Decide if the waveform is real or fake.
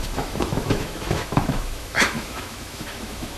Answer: fake